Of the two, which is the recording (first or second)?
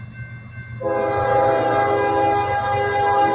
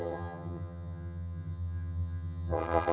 first